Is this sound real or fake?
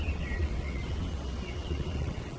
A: fake